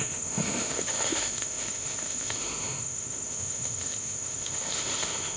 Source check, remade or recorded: remade